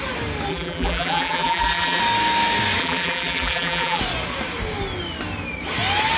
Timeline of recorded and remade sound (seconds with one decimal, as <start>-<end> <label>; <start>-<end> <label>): 0.0-0.5 recorded; 0.5-2.0 remade; 2.0-2.8 recorded; 2.8-4.0 remade; 4.0-6.2 recorded